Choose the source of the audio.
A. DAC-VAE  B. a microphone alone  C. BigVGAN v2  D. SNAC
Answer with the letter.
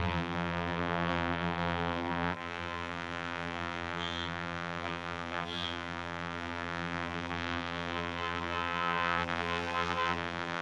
C